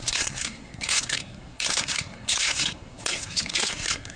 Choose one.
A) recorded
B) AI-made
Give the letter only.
B